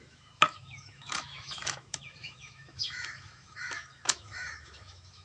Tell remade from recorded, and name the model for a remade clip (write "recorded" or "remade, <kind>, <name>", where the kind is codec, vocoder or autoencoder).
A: remade, autoencoder, DAC-VAE